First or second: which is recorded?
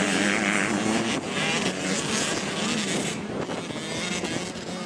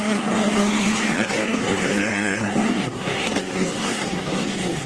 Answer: first